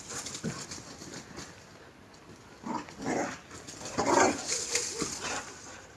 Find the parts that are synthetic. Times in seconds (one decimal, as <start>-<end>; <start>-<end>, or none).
none